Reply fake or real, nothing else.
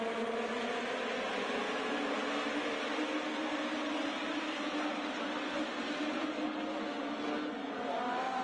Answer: real